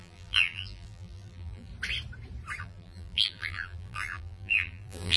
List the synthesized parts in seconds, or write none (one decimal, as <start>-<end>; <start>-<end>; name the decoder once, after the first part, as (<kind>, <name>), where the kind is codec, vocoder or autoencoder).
0.0-1.7 (vocoder, BigVGAN v2); 2.6-5.2